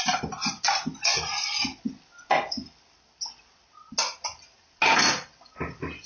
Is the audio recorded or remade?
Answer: recorded